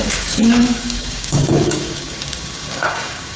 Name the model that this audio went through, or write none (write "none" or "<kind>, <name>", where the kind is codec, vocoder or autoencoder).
codec, DAC